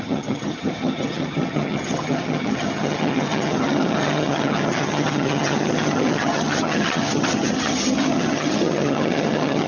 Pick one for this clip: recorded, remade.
remade